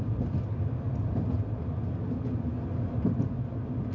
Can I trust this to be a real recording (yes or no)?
yes